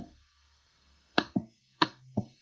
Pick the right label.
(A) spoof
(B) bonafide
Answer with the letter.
A